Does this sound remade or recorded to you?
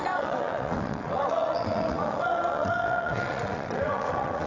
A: remade